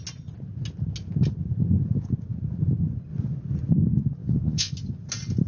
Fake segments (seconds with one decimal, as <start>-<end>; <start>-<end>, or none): 4.2-4.7